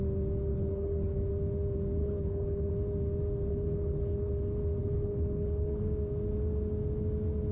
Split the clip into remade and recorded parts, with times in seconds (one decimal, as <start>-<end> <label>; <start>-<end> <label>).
0.0-0.5 recorded; 0.5-1.3 remade; 1.3-2.0 recorded; 2.0-2.7 remade; 2.7-3.5 recorded; 3.5-4.3 remade; 4.3-4.8 recorded; 4.8-5.8 remade; 5.8-7.5 recorded